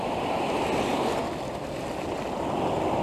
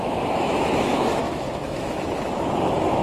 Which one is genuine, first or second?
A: first